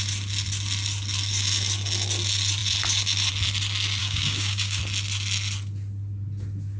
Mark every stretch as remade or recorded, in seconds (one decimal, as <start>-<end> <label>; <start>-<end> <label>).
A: 0.0-4.0 recorded; 4.0-4.8 remade; 4.8-6.8 recorded